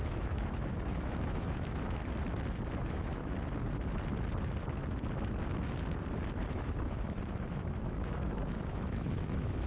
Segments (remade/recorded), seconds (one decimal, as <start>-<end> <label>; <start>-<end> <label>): 0.0-2.0 remade; 2.0-2.8 recorded; 2.8-3.2 remade; 3.2-6.5 recorded; 6.5-9.7 remade